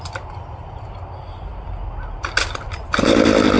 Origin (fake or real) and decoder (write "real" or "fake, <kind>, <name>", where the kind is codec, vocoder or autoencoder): real